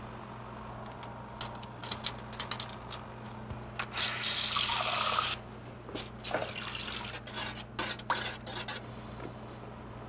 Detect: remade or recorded recorded